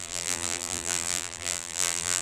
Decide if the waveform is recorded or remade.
remade